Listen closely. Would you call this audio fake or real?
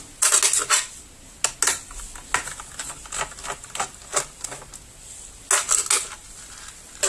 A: real